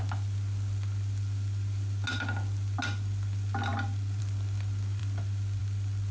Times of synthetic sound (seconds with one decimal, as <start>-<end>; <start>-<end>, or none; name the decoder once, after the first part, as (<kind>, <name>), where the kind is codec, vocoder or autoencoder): none